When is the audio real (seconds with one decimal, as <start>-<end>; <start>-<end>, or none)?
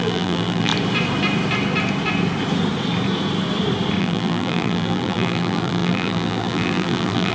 0.7-4.0